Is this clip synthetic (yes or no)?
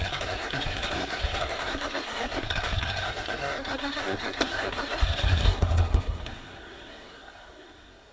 yes